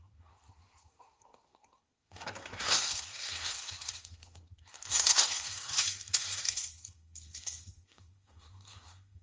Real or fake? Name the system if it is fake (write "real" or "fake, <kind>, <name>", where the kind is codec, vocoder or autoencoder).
fake, codec, SNAC